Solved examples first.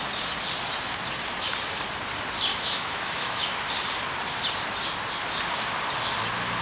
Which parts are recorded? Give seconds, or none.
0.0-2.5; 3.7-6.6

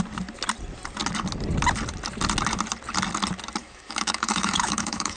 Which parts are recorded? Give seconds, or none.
0.0-3.6

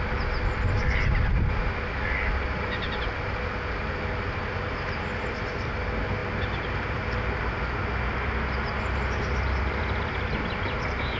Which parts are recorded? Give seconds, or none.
0.0-11.2

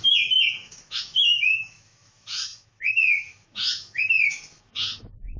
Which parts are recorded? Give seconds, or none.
none

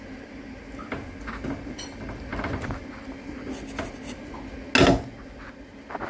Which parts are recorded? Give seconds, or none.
0.0-6.1